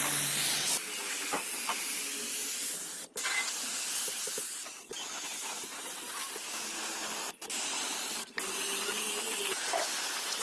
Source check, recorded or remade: recorded